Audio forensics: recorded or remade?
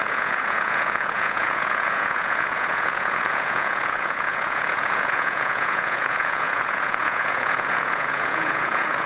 remade